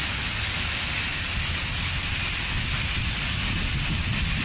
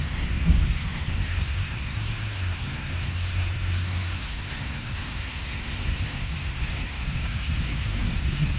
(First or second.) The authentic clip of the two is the first